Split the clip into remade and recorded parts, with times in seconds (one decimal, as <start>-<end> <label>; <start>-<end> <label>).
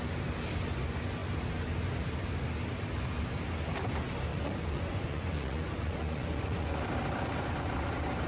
0.0-4.3 recorded; 4.3-6.8 remade; 6.8-8.3 recorded